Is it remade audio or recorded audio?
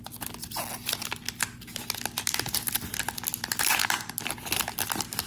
recorded